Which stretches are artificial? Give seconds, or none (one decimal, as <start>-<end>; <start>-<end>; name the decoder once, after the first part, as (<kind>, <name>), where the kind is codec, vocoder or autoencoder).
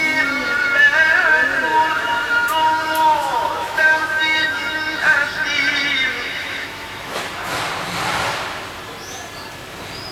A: 1.7-5.0 (autoencoder, DAC-VAE); 6.1-7.2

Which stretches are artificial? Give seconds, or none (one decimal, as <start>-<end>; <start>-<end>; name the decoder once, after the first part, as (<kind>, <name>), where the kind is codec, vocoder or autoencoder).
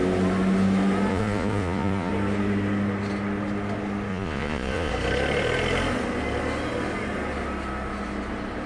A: 1.1-2.1 (vocoder, Vocos); 4.1-4.9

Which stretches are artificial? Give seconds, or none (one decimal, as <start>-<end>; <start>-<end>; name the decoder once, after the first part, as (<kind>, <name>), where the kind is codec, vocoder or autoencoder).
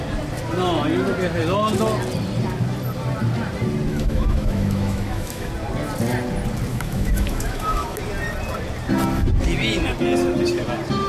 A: 3.9-5.5 (autoencoder, DAC-VAE); 6.7-8.0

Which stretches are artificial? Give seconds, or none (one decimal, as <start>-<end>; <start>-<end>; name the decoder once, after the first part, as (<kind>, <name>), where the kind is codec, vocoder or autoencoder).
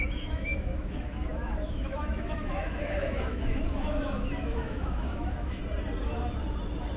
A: 0.0-5.6 (autoencoder, DAC-VAE)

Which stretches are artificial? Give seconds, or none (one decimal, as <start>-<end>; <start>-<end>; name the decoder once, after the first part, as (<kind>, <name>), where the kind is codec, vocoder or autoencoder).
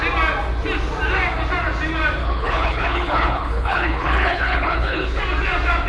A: 2.2-5.2 (codec, HILCodec)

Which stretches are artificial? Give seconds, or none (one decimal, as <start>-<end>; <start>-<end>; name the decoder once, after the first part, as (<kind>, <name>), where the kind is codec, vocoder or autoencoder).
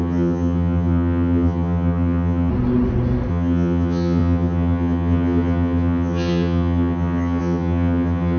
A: 0.0-2.5 (vocoder, HiFi-GAN); 3.3-8.4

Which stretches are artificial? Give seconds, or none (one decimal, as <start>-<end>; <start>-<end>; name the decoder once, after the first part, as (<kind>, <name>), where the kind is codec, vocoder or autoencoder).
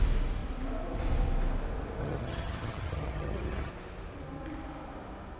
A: 2.0-3.7 (vocoder, HiFi-GAN)